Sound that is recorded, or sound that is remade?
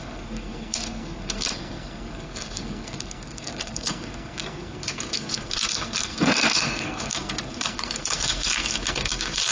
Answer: remade